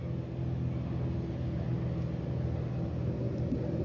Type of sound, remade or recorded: recorded